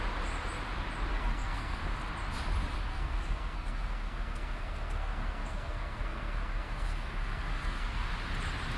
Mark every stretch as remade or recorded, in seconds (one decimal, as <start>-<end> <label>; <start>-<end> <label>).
0.0-1.1 recorded; 1.1-1.9 remade; 1.9-2.9 recorded; 2.9-8.1 remade; 8.1-8.8 recorded